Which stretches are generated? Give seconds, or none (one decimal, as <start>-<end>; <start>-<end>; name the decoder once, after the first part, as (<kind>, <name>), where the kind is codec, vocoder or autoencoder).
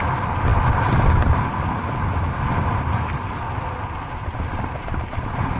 none